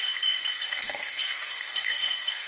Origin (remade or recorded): remade